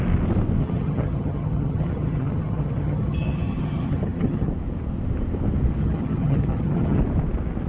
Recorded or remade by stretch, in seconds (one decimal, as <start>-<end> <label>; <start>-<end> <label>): 0.0-0.6 recorded; 0.6-4.5 remade; 4.5-5.8 recorded; 5.8-7.0 remade; 7.0-7.7 recorded